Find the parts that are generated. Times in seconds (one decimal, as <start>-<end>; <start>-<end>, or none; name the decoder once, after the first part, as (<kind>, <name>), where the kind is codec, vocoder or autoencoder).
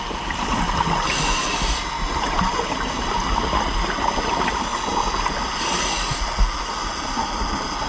none